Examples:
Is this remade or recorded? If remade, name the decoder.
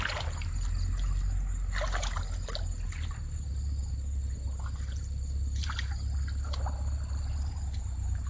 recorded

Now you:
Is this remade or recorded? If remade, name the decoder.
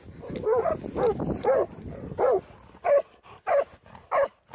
recorded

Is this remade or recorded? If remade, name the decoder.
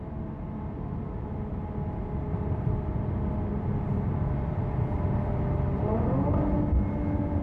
recorded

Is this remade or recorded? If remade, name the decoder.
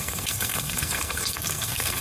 remade, codec, SNAC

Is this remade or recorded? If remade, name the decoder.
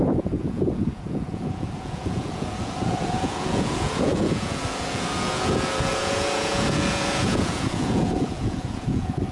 remade, vocoder, Vocos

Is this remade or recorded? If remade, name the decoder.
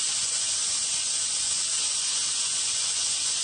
remade, vocoder, Vocos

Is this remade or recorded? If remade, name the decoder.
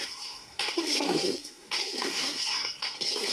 remade, codec, SNAC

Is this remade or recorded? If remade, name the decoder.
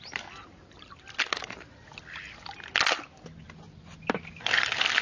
recorded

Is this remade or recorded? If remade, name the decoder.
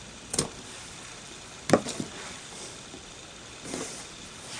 recorded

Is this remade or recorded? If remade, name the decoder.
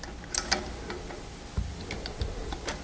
recorded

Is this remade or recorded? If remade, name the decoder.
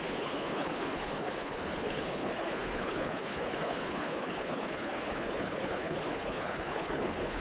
remade, codec, HILCodec